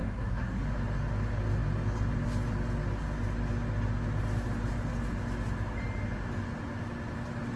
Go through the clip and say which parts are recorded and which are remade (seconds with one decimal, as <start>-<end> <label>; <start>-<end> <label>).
0.0-0.6 remade; 0.6-7.6 recorded